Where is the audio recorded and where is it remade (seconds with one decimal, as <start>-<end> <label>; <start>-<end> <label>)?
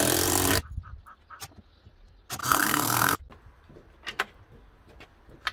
0.0-2.4 recorded; 2.4-3.2 remade; 3.2-5.5 recorded